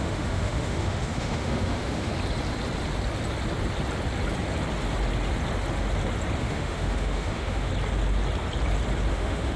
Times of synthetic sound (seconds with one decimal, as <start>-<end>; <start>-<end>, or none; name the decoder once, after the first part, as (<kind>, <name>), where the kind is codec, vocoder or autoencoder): 0.0-2.1 (autoencoder, DAC-VAE); 6.4-7.7; 9.1-9.6